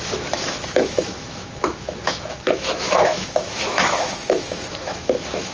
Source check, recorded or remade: remade